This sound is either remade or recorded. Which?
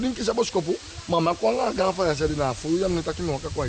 recorded